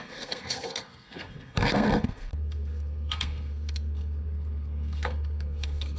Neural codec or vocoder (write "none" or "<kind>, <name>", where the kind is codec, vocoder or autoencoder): codec, SNAC